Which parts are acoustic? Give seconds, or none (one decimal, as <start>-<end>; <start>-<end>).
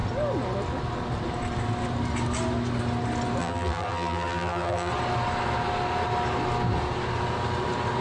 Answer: 0.0-3.4; 4.9-8.0